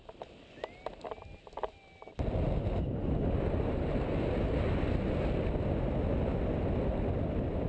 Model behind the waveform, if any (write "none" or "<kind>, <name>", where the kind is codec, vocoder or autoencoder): none